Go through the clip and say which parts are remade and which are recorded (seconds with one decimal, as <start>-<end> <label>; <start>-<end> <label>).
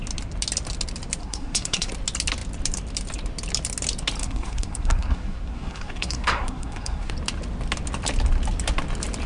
0.0-1.2 recorded; 1.2-1.9 remade; 1.9-4.2 recorded; 4.2-7.1 remade; 7.1-9.3 recorded